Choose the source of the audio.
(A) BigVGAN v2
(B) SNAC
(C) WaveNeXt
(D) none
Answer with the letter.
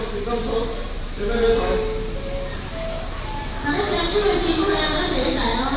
D